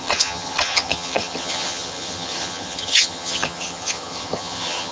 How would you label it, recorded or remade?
remade